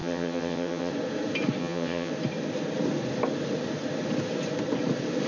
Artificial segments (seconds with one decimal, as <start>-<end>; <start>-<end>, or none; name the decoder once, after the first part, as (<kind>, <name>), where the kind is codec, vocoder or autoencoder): 0.0-0.9 (vocoder, HiFi-GAN); 1.6-2.1